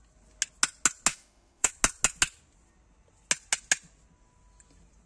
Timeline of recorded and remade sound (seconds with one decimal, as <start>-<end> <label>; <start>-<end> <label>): 0.0-1.1 recorded; 1.1-1.7 remade; 1.7-5.1 recorded